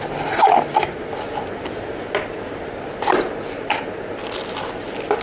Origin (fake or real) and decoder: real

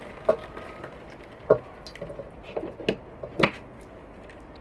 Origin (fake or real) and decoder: real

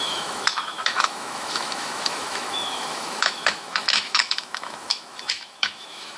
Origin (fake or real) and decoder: fake, autoencoder, DAC-VAE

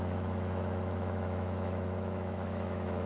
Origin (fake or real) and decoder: fake, autoencoder, DAC-VAE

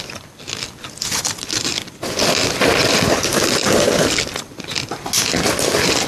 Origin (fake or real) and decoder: real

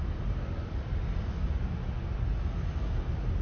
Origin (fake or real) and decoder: real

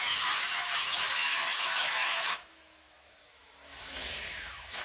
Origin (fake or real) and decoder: fake, autoencoder, DAC-VAE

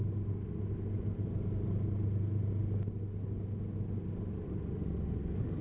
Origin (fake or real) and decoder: real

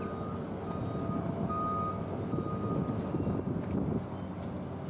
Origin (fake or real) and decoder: real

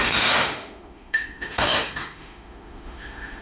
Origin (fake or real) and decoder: fake, autoencoder, DAC-VAE